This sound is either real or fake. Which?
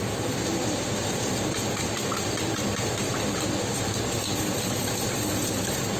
real